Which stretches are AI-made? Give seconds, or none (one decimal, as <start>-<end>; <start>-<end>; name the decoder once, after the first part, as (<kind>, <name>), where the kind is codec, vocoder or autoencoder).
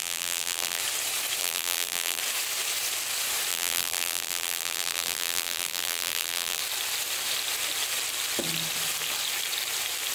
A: 0.0-0.8 (vocoder, BigVGAN v2); 1.4-2.2; 3.5-6.6